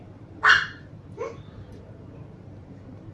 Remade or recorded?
remade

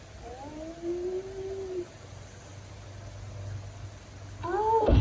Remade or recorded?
recorded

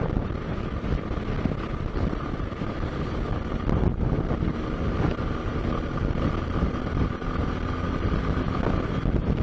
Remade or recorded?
recorded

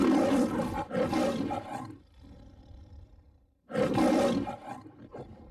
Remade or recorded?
remade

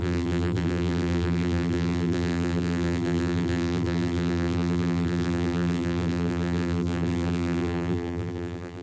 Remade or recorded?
remade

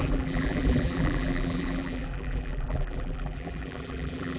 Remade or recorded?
remade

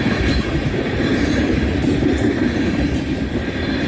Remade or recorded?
remade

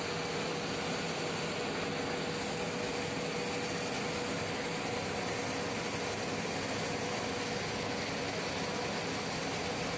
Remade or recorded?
recorded